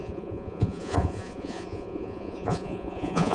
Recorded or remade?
remade